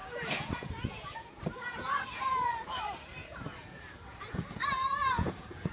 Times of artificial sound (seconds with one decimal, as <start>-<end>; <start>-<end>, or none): 0.0-2.8; 3.2-5.7